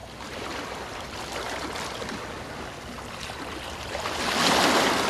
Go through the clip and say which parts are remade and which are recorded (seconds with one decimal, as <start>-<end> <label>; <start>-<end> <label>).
0.0-5.1 recorded